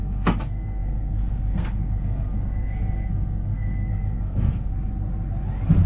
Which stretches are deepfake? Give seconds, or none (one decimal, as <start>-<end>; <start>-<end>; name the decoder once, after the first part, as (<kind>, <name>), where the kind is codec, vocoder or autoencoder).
0.0-4.7 (codec, SNAC)